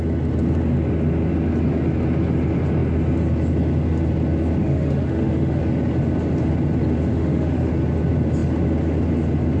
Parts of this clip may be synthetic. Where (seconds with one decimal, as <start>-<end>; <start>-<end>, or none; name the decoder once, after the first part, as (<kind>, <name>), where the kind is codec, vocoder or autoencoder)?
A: 4.6-5.6 (autoencoder, DAC-VAE); 7.1-7.7